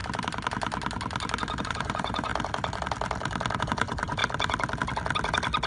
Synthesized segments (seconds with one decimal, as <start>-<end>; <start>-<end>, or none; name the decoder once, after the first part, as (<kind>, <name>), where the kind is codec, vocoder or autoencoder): 1.6-2.3 (vocoder, Vocos); 3.6-4.2